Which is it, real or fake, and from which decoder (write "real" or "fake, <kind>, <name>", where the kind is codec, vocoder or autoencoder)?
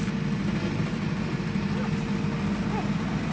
real